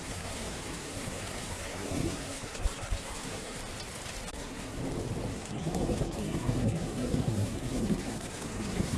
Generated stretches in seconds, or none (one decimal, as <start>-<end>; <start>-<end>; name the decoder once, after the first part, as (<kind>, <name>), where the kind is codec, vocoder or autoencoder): 0.0-3.6 (codec, SNAC); 4.3-4.8; 5.3-9.0